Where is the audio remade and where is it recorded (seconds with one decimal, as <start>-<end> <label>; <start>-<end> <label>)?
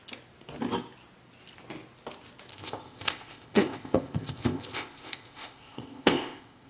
0.0-2.5 recorded; 2.5-6.7 remade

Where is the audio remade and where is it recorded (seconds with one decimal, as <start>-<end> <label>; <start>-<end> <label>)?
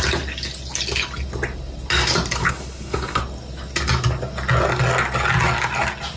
0.0-2.4 recorded; 2.4-3.2 remade; 3.2-6.2 recorded